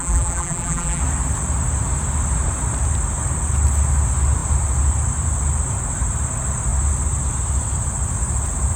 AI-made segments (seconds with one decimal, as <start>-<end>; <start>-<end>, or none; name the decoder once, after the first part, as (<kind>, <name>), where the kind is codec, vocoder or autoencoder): 0.0-1.0 (vocoder, BigVGAN v2)